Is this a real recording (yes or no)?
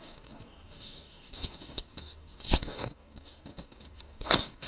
no